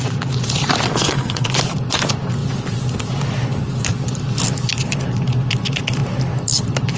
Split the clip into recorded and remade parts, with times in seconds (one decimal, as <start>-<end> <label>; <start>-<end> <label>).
0.0-0.9 recorded; 0.9-1.5 remade; 1.5-7.0 recorded